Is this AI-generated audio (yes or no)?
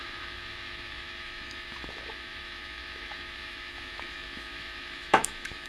yes